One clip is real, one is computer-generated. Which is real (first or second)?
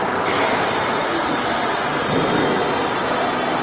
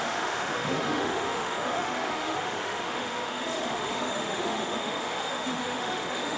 first